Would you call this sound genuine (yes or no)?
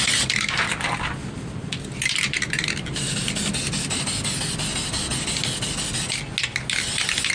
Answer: yes